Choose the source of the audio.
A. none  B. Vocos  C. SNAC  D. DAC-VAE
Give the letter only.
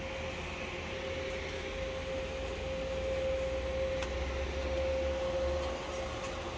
A